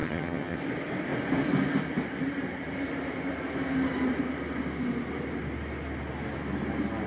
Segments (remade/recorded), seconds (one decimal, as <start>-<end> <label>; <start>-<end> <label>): 0.0-0.6 remade; 0.6-7.1 recorded